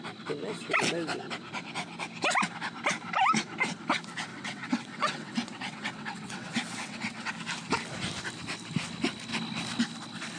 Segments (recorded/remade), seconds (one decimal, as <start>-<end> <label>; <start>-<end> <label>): 0.0-4.3 recorded; 4.3-7.3 remade; 7.3-10.4 recorded